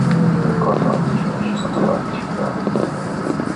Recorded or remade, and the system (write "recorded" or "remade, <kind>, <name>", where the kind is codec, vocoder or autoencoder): recorded